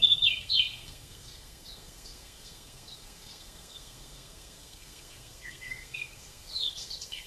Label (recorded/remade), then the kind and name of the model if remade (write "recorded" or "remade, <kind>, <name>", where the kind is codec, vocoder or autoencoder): remade, codec, SNAC